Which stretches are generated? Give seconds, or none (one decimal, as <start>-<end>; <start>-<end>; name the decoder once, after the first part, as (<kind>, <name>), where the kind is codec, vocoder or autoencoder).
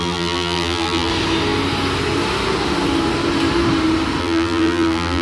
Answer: 0.0-1.1 (vocoder, BigVGAN v2); 4.2-5.2